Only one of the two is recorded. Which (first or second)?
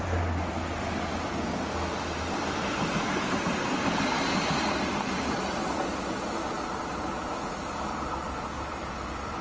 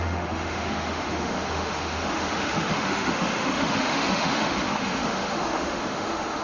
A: first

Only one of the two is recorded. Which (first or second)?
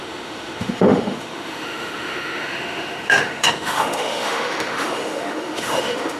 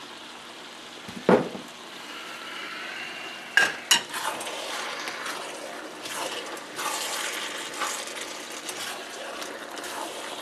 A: second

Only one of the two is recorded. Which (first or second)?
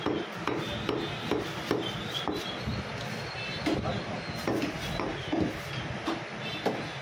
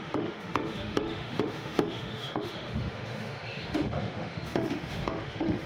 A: first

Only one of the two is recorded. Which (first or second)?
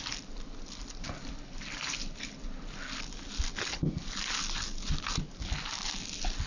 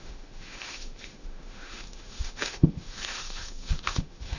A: first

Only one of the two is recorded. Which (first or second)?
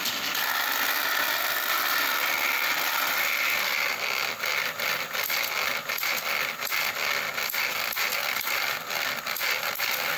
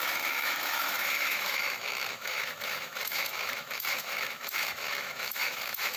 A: first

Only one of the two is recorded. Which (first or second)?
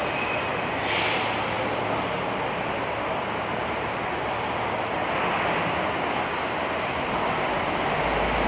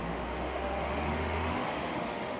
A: first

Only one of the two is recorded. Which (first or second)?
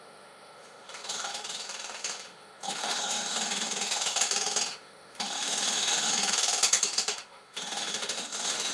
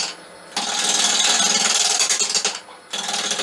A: second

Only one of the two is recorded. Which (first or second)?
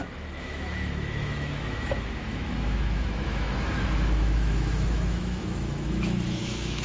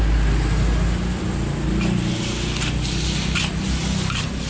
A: second